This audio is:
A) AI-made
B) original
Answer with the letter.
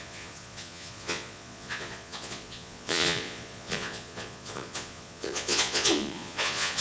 A